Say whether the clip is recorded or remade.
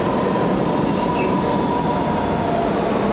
recorded